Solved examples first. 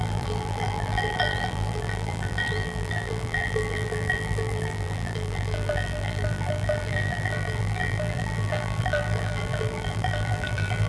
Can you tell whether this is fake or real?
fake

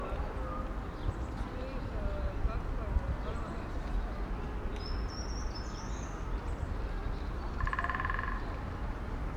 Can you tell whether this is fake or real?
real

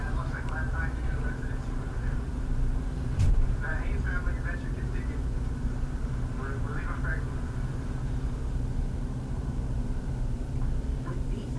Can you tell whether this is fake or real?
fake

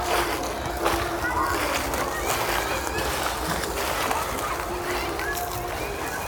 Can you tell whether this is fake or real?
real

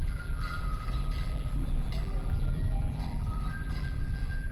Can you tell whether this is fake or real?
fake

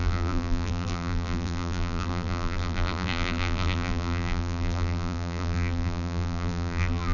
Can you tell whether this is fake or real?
fake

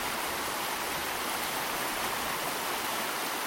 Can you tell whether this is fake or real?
real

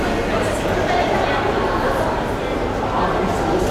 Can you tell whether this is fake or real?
real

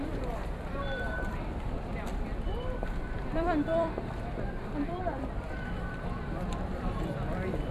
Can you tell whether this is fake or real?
fake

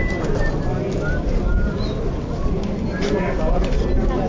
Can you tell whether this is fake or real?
real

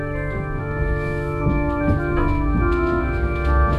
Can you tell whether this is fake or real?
real